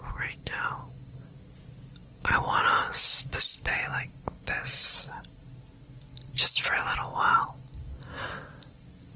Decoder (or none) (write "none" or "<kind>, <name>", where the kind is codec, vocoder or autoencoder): none